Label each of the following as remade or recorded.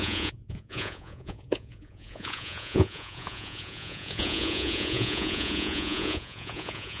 remade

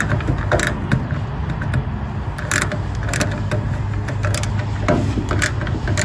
recorded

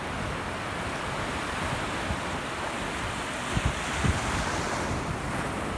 recorded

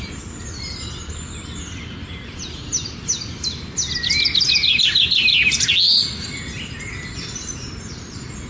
recorded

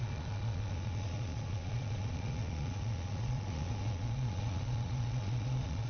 remade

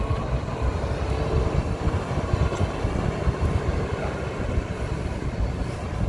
recorded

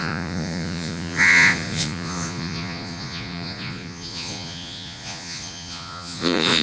remade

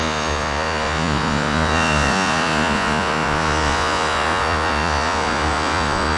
remade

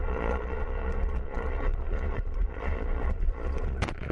remade